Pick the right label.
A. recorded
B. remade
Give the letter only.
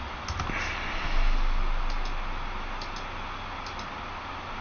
A